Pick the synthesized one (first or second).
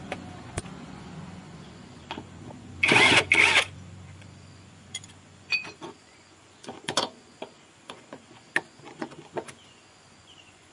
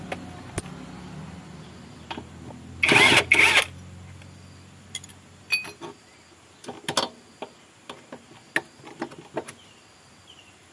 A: first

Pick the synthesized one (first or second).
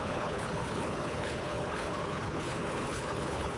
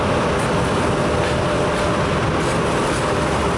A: first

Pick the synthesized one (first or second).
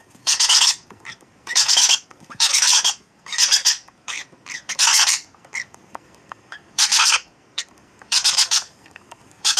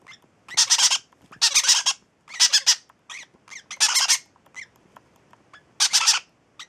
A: first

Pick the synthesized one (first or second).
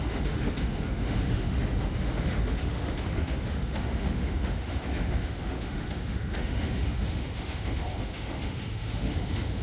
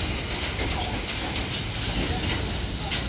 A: first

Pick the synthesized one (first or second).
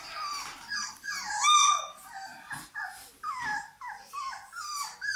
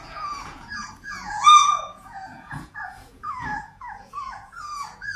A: second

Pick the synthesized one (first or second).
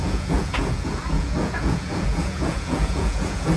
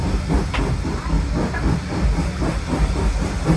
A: first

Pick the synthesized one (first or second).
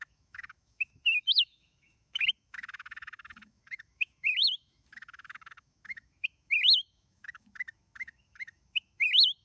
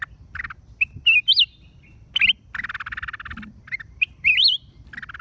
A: first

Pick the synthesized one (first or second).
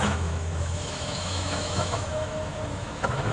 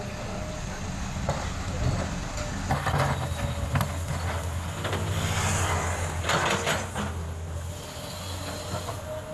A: first